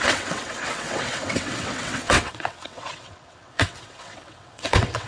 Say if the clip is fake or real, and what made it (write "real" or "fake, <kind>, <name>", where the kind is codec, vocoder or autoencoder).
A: fake, vocoder, WaveNeXt